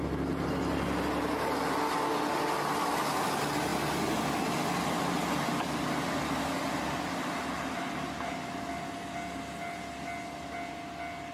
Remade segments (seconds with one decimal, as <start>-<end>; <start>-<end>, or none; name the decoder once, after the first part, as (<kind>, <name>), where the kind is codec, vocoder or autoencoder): none